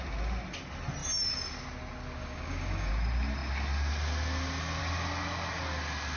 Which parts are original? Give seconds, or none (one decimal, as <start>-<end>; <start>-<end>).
0.0-2.2; 2.9-6.2